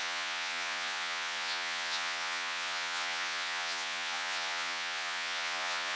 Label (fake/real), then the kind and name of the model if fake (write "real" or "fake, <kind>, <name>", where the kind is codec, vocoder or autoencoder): fake, vocoder, Vocos